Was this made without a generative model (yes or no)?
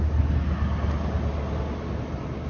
yes